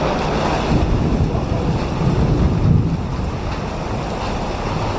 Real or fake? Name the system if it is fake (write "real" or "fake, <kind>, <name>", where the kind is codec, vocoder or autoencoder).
real